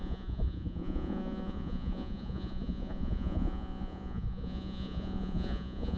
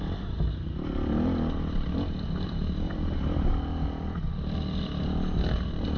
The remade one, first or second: first